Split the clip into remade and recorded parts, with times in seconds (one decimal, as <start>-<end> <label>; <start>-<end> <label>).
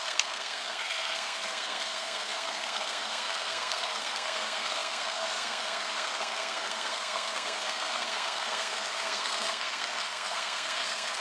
0.0-11.2 remade